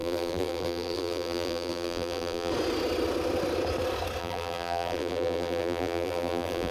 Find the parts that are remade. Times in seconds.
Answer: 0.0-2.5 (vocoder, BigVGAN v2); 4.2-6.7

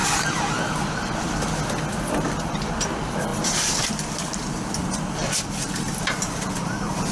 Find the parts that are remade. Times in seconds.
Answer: 0.0-7.1 (vocoder, BigVGAN v2)

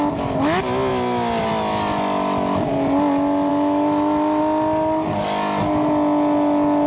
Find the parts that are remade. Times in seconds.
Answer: 3.5-4.4 (autoencoder, DAC-VAE)

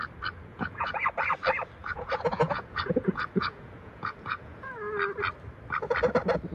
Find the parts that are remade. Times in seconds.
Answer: 0.5-1.0 (vocoder, Vocos); 1.8-4.7

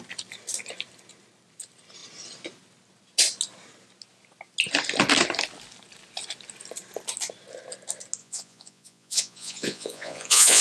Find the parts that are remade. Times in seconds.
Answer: 8.2-10.6 (vocoder, Vocos)

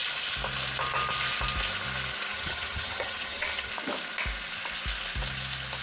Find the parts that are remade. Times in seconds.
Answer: 2.3-3.7 (vocoder, HiFi-GAN)

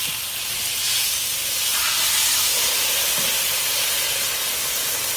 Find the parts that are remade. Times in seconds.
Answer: none

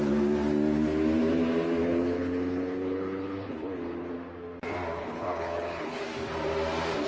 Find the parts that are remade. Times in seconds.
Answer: 1.8-4.1 (codec, HILCodec); 5.0-6.0